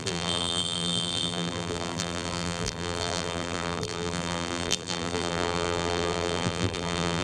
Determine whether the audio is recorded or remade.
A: remade